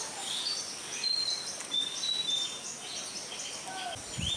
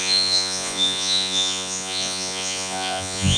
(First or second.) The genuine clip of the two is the first